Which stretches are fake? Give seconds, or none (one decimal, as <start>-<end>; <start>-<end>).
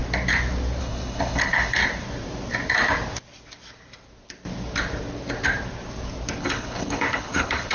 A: 0.8-1.8; 6.4-7.7